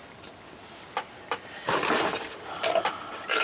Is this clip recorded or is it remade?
recorded